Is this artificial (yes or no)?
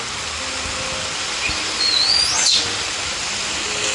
no